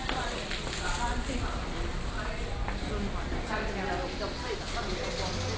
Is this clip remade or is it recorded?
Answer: recorded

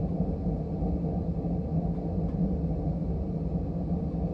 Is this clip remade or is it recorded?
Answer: recorded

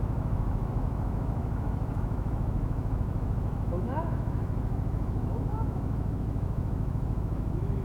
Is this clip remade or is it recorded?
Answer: remade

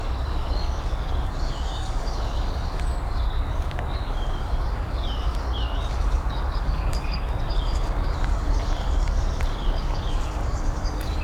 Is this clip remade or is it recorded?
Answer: remade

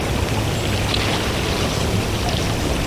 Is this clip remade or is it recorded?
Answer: recorded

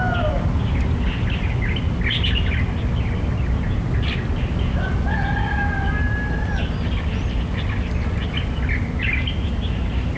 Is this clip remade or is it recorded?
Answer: recorded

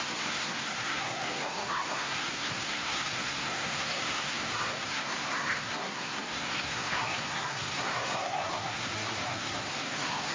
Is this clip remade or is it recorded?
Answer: remade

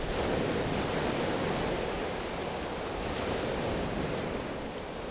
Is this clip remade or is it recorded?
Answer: recorded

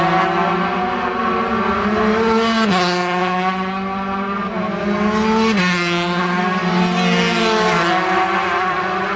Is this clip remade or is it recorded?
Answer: recorded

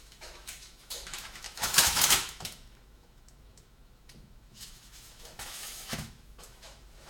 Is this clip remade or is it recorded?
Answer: remade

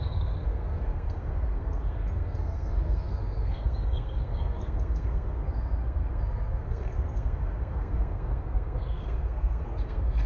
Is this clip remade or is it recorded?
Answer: remade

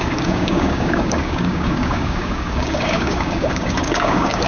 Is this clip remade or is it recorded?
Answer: remade